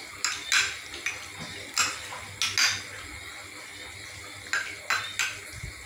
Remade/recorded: recorded